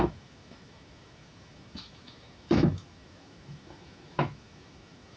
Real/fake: fake